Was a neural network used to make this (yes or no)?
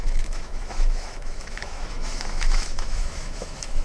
yes